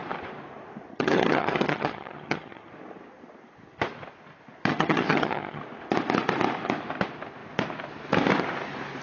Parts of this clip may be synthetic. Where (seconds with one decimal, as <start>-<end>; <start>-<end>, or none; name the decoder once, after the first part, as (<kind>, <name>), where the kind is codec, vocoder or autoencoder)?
0.9-2.7 (vocoder, HiFi-GAN); 4.7-5.6